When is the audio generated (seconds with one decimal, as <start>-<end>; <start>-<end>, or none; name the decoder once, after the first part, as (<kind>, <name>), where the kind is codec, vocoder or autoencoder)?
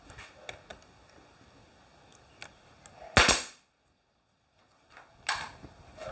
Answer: none